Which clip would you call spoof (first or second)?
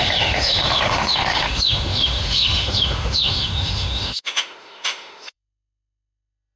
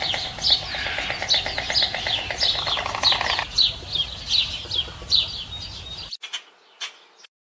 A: first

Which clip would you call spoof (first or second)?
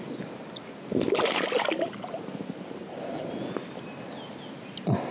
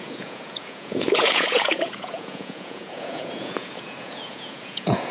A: second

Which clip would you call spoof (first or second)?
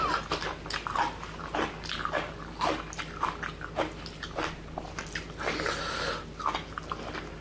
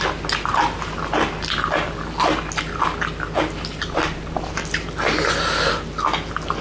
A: first